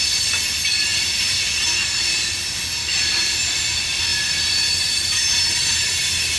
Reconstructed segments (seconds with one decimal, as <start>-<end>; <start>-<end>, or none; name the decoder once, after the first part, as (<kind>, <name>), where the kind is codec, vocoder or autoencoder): 0.9-1.4 (vocoder, BigVGAN v2); 4.1-6.4